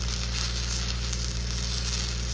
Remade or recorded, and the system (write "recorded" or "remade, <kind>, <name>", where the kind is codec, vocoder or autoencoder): recorded